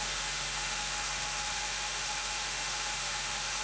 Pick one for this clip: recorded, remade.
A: remade